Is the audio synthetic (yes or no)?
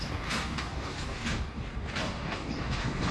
yes